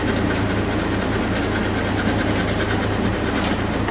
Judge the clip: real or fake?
real